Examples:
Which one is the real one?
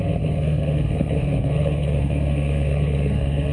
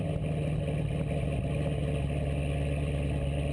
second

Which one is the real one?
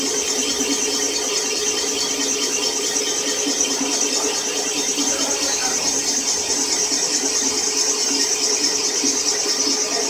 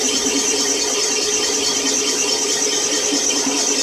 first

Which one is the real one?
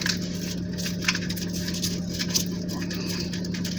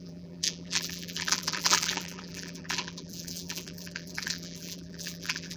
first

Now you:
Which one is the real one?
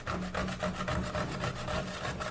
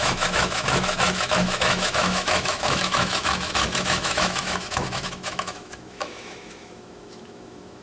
first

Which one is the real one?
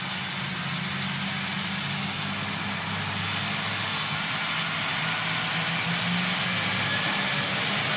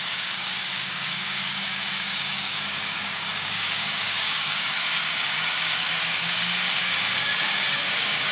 first